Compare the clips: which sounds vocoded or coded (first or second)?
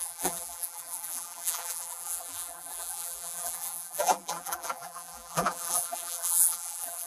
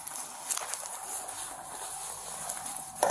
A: first